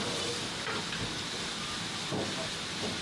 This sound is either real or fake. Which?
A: real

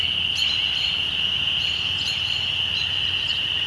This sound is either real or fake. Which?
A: real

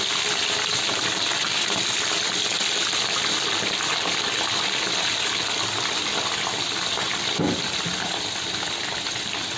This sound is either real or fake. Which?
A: real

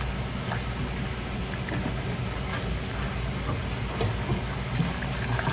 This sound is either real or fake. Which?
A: real